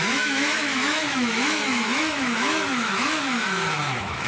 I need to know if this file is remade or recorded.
remade